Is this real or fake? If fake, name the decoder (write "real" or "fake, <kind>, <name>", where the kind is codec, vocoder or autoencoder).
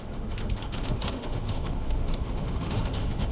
fake, autoencoder, DAC-VAE